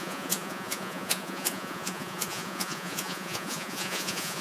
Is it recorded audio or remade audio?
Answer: remade